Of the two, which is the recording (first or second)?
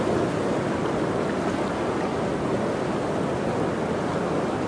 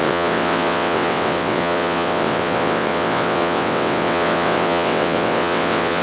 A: first